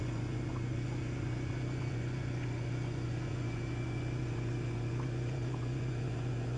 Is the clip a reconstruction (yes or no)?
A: yes